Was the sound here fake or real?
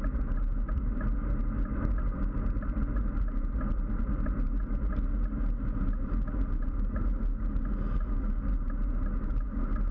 real